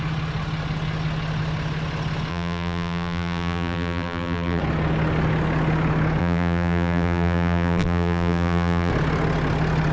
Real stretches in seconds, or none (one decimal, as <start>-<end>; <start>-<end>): 0.0-2.3; 4.6-6.2; 8.9-9.9